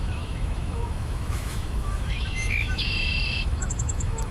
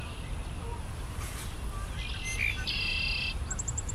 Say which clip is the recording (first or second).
second